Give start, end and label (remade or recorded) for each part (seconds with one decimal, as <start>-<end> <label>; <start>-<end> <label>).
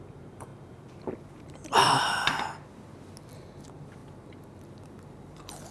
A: 0.0-0.5 remade; 0.5-3.4 recorded; 3.4-4.0 remade; 4.0-5.7 recorded